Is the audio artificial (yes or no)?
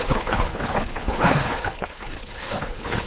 yes